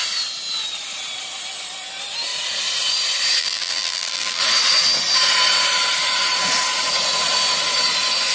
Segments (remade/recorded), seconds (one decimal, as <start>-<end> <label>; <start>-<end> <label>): 0.0-3.4 recorded; 3.4-4.4 remade; 4.4-8.3 recorded